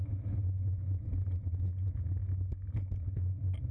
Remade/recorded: recorded